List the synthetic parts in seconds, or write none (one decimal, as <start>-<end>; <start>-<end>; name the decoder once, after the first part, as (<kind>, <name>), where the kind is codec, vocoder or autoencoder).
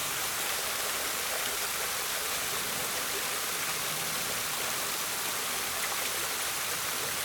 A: 0.0-0.7 (vocoder, BigVGAN v2)